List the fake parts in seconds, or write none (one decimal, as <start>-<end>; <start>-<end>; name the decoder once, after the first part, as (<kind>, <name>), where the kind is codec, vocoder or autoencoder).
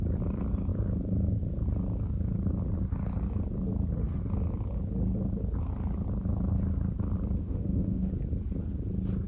7.4-8.1 (autoencoder, DAC-VAE)